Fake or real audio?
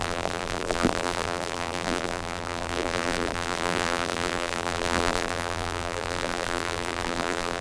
fake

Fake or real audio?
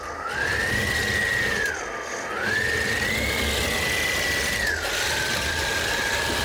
real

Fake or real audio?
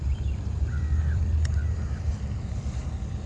fake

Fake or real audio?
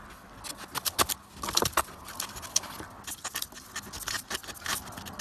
real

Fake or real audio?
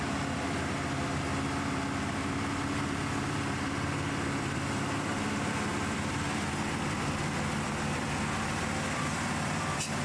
fake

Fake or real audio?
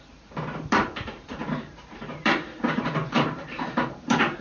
fake